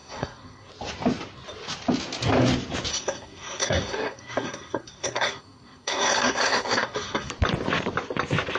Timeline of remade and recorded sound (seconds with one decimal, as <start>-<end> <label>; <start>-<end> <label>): 0.0-0.7 remade; 0.7-2.9 recorded; 2.9-7.3 remade; 7.3-8.6 recorded